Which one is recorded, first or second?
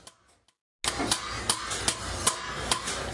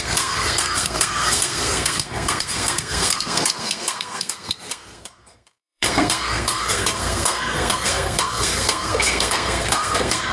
first